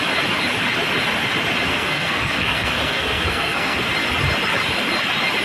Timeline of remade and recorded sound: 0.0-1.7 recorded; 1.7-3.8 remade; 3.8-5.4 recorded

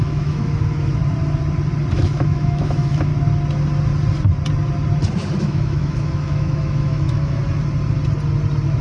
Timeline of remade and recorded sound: 0.0-1.0 remade; 1.0-1.9 recorded; 1.9-3.1 remade; 3.1-5.4 recorded; 5.4-7.4 remade; 7.4-8.8 recorded

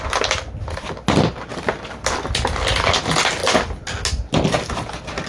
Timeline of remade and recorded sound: 0.0-5.3 recorded

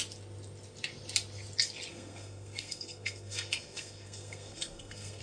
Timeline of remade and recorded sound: 0.0-1.9 recorded; 1.9-5.2 remade

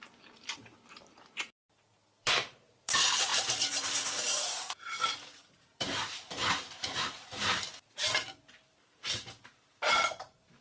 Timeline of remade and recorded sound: 0.0-10.6 remade